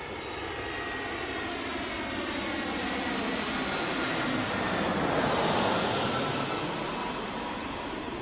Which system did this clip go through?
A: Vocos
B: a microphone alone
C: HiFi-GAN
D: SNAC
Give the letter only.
B